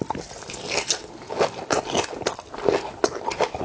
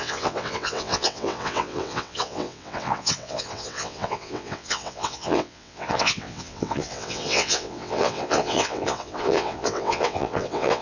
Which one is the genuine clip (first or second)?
first